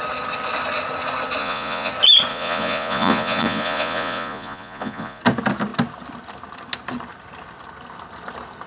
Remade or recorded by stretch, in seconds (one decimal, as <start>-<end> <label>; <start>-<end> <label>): 0.0-1.4 recorded; 1.4-1.9 remade; 1.9-2.3 recorded; 2.3-5.2 remade; 5.2-8.7 recorded